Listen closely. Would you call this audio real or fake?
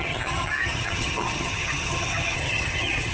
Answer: fake